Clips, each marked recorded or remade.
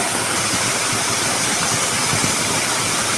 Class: recorded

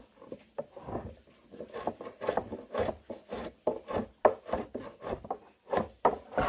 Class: recorded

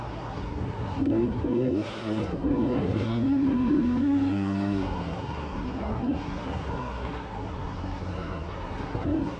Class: remade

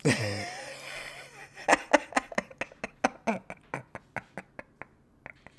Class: recorded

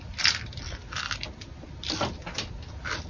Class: recorded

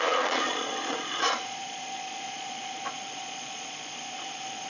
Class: remade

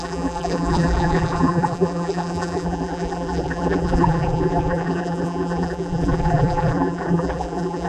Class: remade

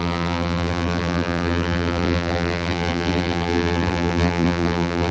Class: remade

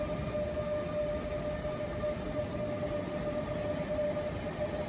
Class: recorded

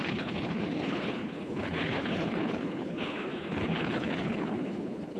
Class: remade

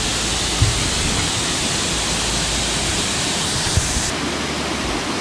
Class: recorded